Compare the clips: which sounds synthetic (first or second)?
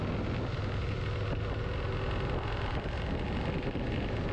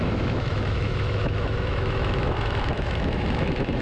second